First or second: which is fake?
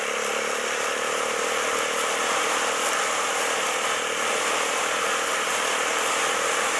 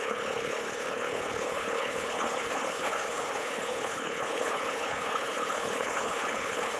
second